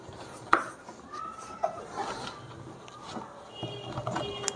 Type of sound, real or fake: real